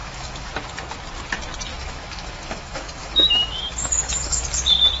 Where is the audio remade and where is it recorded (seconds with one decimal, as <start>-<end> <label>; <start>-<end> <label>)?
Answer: 0.0-0.5 remade; 0.5-1.7 recorded; 1.7-4.4 remade; 4.4-5.0 recorded